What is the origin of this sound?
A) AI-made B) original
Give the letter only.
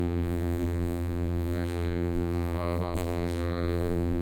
A